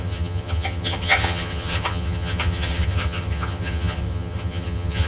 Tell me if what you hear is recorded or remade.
remade